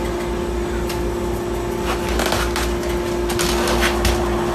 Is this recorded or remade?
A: recorded